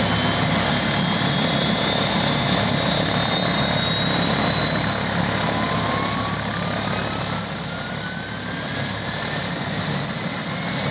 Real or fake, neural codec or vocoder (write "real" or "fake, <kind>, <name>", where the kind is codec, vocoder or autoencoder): real